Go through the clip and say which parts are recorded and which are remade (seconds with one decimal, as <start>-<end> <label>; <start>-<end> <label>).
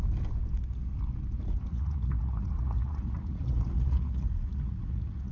0.0-1.7 recorded; 1.7-5.3 remade